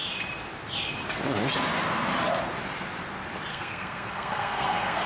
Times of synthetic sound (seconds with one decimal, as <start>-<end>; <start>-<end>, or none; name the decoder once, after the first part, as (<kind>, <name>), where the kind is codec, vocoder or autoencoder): 3.5-5.1 (codec, SNAC)

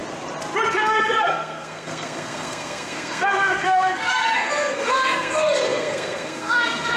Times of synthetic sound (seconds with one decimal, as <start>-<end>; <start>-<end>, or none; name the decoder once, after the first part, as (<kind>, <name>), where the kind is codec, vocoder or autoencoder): 0.7-7.0 (codec, SNAC)